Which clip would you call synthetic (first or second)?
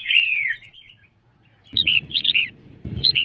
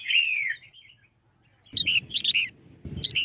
first